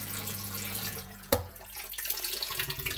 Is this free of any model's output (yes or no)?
no